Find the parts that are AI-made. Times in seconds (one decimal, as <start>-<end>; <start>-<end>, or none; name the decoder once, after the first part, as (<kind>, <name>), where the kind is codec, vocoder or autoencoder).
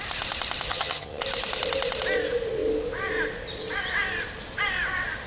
0.7-1.2 (vocoder, HiFi-GAN)